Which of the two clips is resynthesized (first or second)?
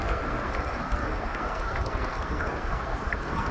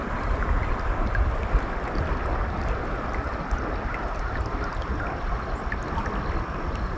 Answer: first